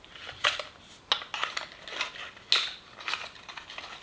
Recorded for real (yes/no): yes